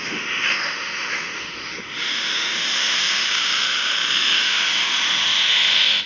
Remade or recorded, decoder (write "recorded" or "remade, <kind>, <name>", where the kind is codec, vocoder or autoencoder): remade, autoencoder, DAC-VAE